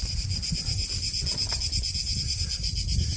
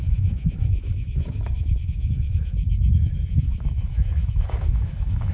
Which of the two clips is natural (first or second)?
first